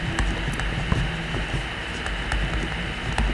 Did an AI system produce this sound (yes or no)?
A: no